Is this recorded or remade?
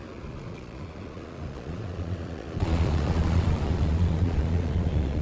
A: remade